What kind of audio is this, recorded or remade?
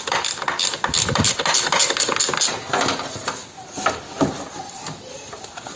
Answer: recorded